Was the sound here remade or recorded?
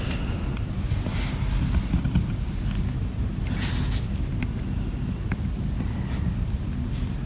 recorded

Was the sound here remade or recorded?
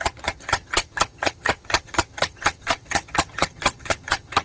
remade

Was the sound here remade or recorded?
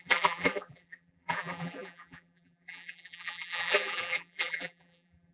remade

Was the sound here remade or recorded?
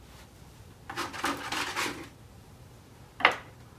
remade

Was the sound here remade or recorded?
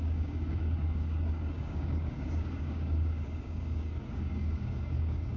remade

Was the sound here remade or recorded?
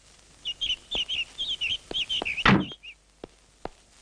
recorded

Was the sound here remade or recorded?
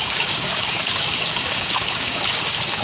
remade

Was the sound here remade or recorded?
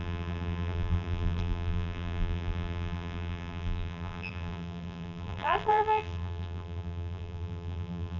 remade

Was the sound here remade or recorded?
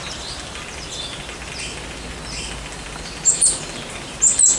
recorded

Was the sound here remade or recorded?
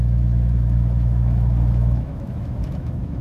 remade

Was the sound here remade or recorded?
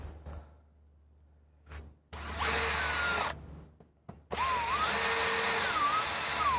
recorded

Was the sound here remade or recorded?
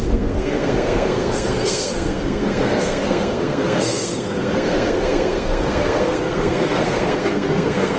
remade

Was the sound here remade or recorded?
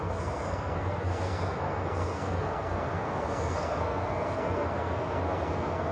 remade